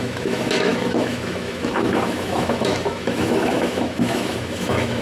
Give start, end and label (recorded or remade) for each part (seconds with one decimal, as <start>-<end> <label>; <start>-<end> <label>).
0.0-5.0 remade